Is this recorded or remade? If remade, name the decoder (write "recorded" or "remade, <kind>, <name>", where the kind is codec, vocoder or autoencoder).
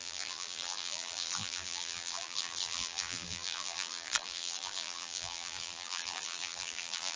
remade, vocoder, BigVGAN v2